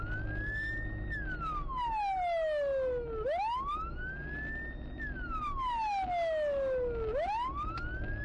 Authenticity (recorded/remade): recorded